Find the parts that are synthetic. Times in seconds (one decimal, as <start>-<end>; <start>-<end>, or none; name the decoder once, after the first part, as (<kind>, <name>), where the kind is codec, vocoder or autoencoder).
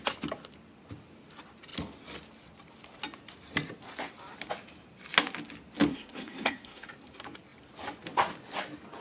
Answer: 5.9-6.9 (codec, SNAC)